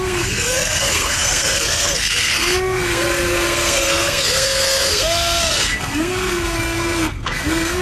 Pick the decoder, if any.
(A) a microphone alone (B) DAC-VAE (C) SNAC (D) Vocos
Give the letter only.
C